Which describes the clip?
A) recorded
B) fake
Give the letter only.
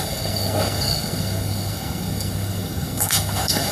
B